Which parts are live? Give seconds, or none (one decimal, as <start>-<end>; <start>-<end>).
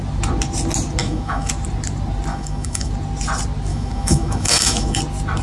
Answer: 0.0-1.0; 1.5-2.3; 2.9-3.7; 5.0-5.4